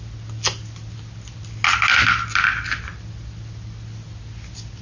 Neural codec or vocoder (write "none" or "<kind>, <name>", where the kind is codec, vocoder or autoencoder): none